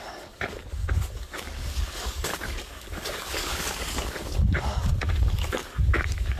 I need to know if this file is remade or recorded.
remade